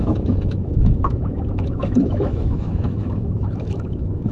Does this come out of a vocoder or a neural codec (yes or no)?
yes